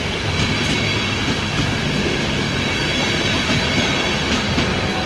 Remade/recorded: recorded